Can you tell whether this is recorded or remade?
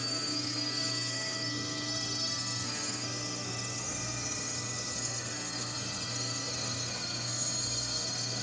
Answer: remade